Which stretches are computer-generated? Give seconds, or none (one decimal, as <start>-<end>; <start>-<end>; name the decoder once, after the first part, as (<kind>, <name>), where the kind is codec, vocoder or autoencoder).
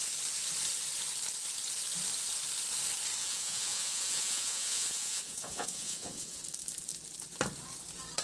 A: 3.2-6.4 (vocoder, Vocos)